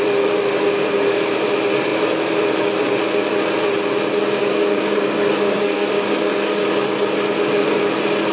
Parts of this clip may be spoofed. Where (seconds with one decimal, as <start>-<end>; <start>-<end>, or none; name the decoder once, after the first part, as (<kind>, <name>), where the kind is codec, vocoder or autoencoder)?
4.4-6.6 (codec, DAC)